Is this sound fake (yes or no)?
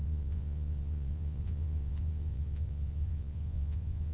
yes